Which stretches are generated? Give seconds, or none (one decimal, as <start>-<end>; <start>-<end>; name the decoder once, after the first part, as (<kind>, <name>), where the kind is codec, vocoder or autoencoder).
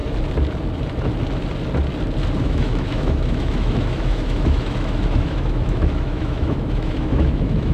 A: 2.4-7.7 (autoencoder, DAC-VAE)